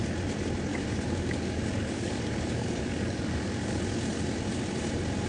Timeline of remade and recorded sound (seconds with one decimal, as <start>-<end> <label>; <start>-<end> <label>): 0.0-0.7 recorded; 0.7-3.8 remade; 3.8-5.3 recorded